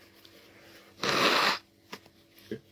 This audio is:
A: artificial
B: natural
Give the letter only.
B